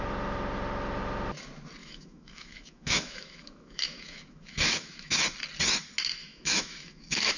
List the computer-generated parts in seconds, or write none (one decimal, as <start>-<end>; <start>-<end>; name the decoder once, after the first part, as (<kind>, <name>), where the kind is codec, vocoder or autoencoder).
1.8-5.2 (autoencoder, DAC-VAE); 6.2-7.4